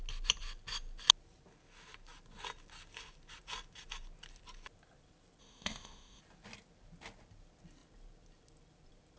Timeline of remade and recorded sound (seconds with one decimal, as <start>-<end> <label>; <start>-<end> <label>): 0.0-5.4 recorded; 5.4-6.2 remade; 6.2-9.2 recorded